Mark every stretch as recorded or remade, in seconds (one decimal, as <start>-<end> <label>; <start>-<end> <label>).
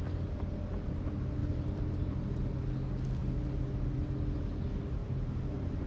0.0-1.4 recorded; 1.4-2.5 remade; 2.5-5.0 recorded; 5.0-5.9 remade